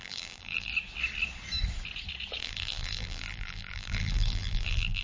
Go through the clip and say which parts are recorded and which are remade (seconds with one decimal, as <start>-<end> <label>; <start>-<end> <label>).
0.0-0.7 remade; 0.7-2.4 recorded; 2.4-5.0 remade